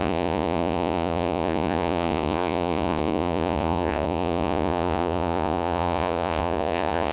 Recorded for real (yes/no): no